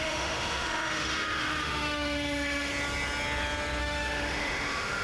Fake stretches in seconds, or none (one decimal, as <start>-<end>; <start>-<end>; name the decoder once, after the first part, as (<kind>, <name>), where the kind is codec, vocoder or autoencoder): 0.0-2.7 (autoencoder, DAC-VAE); 3.8-5.0